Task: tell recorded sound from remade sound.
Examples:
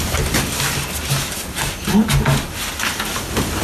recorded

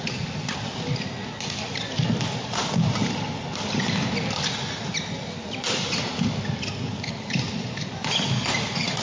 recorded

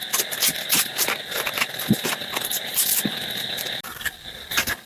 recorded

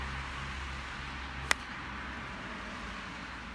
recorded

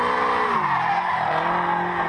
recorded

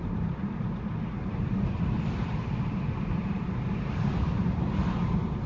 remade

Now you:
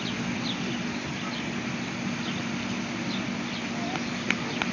recorded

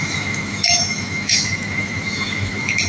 remade